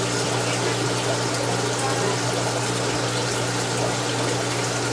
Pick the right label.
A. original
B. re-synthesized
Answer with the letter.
A